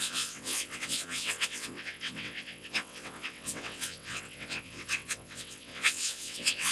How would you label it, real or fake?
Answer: fake